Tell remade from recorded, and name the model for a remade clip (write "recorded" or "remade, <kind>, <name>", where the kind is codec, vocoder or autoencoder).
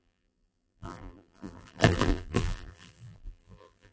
remade, vocoder, BigVGAN v2